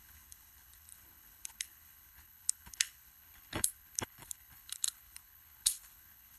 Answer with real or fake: fake